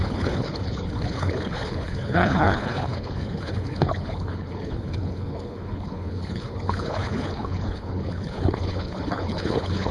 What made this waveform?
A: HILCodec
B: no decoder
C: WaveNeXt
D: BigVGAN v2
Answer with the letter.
A